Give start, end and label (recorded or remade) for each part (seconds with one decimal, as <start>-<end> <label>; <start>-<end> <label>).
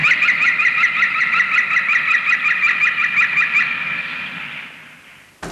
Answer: 0.0-2.6 remade; 2.6-5.5 recorded